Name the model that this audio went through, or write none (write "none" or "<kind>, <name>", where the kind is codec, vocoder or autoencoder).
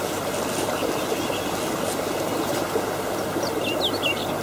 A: none